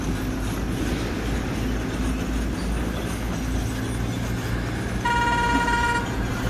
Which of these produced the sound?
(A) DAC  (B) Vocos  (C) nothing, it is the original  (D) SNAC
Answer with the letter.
C